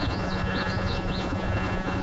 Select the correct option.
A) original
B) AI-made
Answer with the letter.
B